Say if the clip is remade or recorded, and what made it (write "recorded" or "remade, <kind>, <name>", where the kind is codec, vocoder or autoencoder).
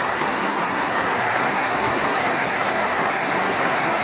remade, codec, SNAC